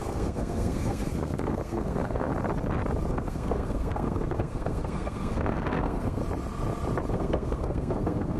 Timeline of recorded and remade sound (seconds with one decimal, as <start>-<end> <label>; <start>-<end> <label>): 0.0-2.3 remade; 2.3-3.1 recorded; 3.1-6.2 remade; 6.2-7.1 recorded; 7.1-8.4 remade